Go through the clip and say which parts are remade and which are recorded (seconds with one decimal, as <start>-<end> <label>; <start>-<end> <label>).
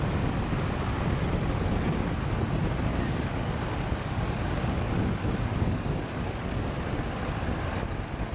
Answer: 0.0-2.9 recorded; 2.9-6.6 remade; 6.6-8.3 recorded